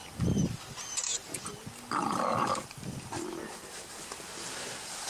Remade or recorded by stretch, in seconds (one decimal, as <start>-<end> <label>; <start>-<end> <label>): 0.0-1.5 remade; 1.5-2.0 recorded; 2.0-3.6 remade; 3.6-5.1 recorded